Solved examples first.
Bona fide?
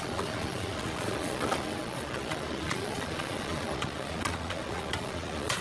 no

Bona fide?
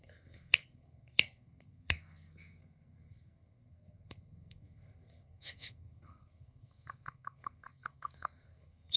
no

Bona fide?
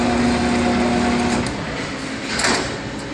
yes